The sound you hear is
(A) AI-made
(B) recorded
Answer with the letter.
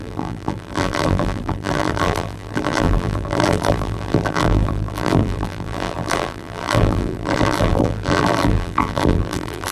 A